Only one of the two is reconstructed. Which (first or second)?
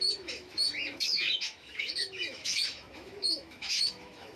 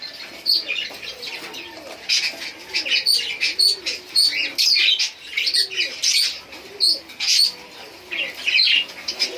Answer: first